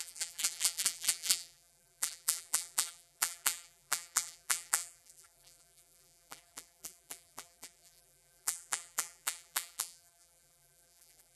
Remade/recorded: remade